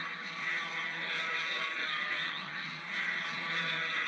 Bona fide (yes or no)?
no